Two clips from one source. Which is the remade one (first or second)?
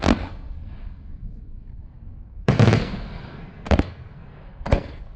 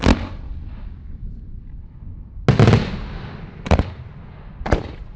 first